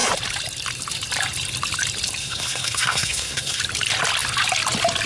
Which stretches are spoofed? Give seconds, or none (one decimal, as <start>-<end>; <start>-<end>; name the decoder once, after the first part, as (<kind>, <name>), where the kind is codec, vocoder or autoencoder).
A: 2.2-3.6 (codec, SNAC)

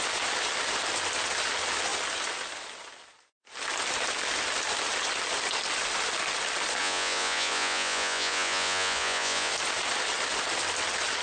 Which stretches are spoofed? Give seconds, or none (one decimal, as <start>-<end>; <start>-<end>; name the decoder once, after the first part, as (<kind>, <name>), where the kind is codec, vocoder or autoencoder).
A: 6.8-9.5 (vocoder, Vocos)

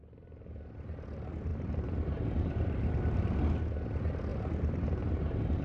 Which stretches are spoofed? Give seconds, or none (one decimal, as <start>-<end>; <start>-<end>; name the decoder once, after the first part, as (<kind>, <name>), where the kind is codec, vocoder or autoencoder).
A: 1.5-3.6 (vocoder, BigVGAN v2); 4.3-5.6

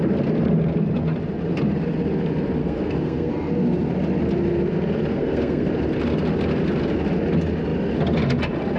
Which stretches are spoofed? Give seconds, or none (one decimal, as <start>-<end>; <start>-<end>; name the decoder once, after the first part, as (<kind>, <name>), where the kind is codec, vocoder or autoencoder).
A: 2.6-3.3 (codec, SNAC); 5.1-5.7

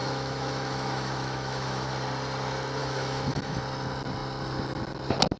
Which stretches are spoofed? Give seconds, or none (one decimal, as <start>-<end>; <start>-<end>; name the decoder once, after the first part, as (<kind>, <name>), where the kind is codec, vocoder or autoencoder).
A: 0.0-1.9 (autoencoder, DAC-VAE); 2.8-3.6